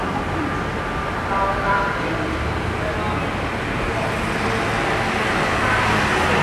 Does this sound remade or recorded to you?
recorded